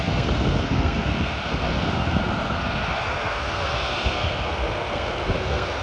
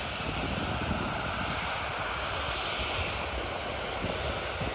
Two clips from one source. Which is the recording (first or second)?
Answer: second